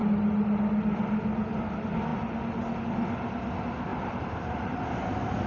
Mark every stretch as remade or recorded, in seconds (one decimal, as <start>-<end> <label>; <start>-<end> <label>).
0.0-0.6 remade; 0.6-3.9 recorded; 3.9-4.8 remade; 4.8-5.5 recorded